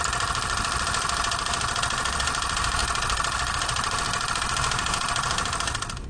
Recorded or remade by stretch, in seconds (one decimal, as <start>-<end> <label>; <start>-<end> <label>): 0.0-6.1 recorded